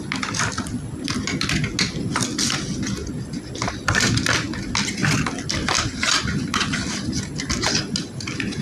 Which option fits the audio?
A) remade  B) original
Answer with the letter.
B